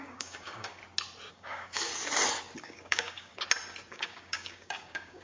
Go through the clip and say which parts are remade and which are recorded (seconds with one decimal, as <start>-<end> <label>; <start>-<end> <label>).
0.0-0.8 remade; 0.8-1.3 recorded; 1.3-1.9 remade; 1.9-2.6 recorded; 2.6-3.3 remade; 3.3-3.9 recorded; 3.9-5.2 remade